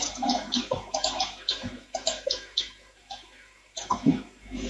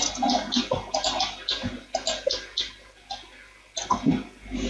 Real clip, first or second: second